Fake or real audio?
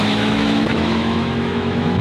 fake